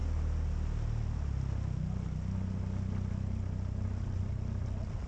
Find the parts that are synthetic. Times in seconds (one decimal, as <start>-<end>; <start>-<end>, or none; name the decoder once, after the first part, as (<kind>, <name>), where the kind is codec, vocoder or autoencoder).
none